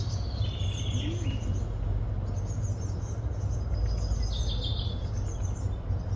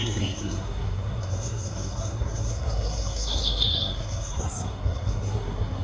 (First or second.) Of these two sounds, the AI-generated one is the second